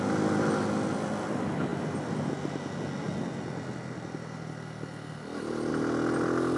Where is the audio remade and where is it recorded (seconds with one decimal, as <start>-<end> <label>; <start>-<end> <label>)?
0.0-6.6 recorded